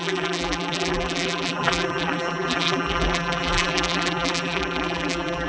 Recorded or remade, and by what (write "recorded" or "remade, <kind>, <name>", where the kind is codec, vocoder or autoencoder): remade, vocoder, BigVGAN v2